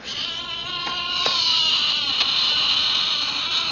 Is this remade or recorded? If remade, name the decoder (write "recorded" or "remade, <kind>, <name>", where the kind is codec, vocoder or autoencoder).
remade, vocoder, Vocos